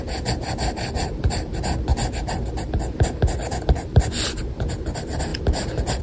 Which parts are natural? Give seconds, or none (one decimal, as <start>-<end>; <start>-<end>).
0.0-6.0